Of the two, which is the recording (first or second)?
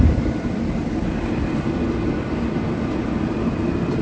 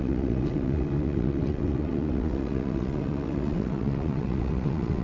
first